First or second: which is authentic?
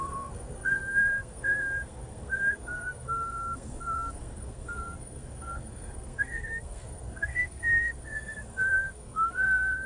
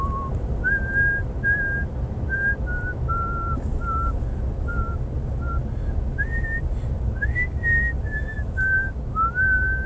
second